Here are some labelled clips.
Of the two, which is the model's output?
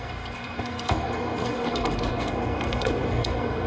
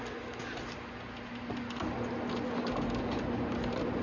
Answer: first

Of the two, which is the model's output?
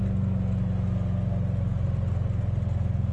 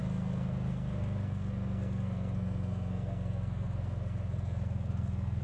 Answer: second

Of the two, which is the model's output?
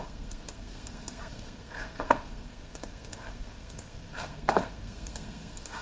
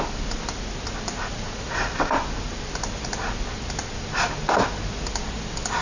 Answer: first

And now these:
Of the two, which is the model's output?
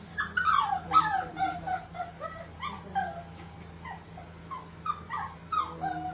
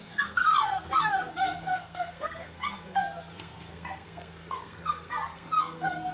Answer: second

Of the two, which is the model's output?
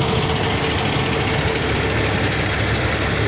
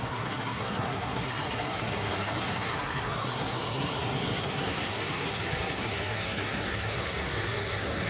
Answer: second